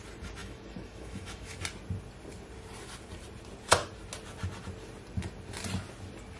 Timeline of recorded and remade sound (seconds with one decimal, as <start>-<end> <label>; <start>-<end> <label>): 0.0-0.4 recorded; 0.4-1.6 remade; 1.6-6.4 recorded